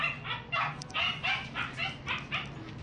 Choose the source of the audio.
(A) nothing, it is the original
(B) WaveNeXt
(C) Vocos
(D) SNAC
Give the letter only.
A